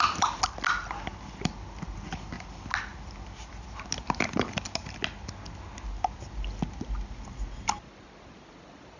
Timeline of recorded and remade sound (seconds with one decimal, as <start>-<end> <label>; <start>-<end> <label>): 0.0-9.0 recorded